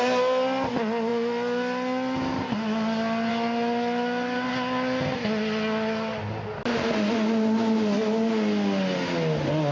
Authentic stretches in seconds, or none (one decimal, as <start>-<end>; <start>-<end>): 0.0-9.7